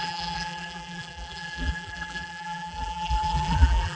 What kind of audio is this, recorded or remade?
remade